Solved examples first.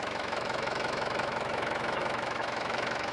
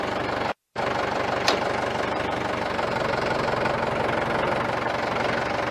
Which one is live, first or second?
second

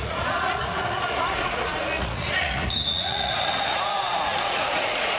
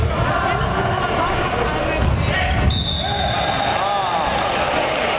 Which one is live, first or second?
second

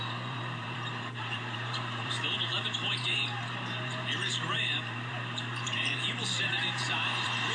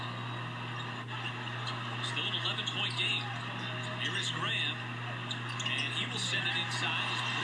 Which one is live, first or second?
second